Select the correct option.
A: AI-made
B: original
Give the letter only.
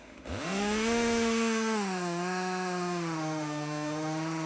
A